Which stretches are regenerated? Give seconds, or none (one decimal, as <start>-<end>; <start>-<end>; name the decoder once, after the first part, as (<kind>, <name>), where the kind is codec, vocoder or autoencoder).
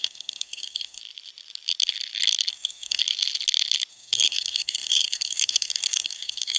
0.0-1.0 (codec, SNAC); 2.5-3.0; 3.9-6.6